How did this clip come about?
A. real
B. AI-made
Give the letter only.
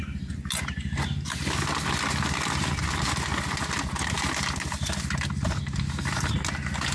A